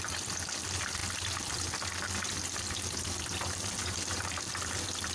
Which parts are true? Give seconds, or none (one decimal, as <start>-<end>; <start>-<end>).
0.0-3.8; 4.5-5.1